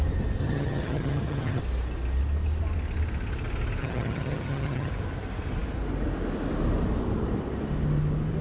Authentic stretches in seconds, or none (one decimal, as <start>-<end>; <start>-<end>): 0.0-0.4; 1.6-3.8; 4.9-8.4